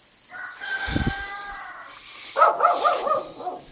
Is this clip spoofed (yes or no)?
no